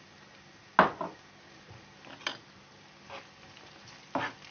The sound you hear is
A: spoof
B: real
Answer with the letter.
B